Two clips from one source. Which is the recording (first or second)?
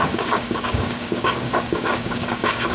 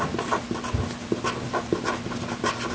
second